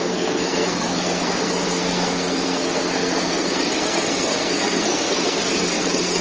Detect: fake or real fake